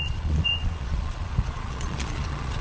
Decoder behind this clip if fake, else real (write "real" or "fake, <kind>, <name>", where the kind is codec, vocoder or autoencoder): fake, vocoder, Vocos